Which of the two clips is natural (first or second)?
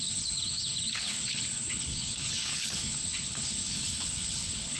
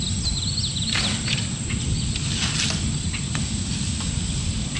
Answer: second